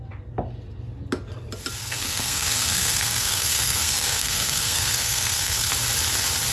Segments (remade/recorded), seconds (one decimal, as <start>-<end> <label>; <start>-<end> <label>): 0.0-1.8 recorded; 1.8-5.7 remade; 5.7-6.5 recorded